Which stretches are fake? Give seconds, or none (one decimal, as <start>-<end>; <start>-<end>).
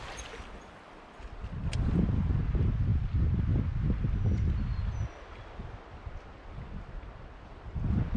none